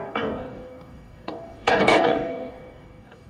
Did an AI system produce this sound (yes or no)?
yes